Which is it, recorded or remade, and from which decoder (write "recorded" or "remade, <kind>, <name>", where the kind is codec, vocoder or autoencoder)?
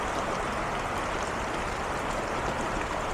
remade, vocoder, BigVGAN v2